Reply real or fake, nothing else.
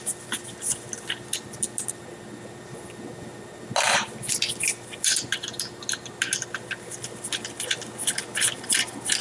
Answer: real